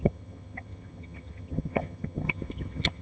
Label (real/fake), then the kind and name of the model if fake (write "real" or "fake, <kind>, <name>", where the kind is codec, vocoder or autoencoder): fake, vocoder, HiFi-GAN